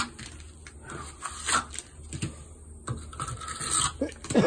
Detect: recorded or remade recorded